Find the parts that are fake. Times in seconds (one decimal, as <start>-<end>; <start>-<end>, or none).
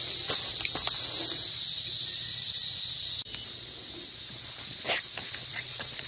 5.5-6.1